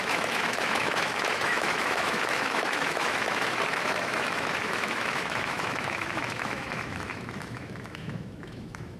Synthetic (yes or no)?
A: yes